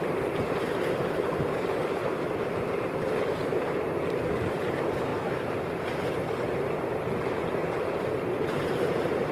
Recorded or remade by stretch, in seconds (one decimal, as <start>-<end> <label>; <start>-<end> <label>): 0.0-2.0 remade; 2.0-3.4 recorded; 3.4-9.3 remade